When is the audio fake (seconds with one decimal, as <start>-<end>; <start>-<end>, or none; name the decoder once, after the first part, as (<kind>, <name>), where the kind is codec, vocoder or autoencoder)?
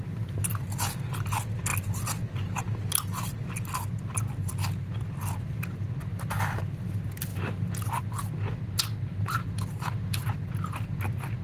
9.1-10.3 (vocoder, BigVGAN v2)